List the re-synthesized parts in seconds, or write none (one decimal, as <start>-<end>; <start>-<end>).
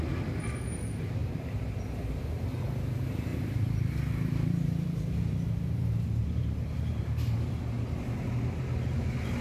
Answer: 1.2-2.6; 3.3-7.6